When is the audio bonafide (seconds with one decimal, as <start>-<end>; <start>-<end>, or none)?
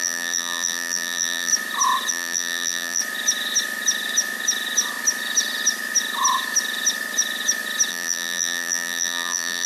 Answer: 1.5-2.1; 3.0-7.9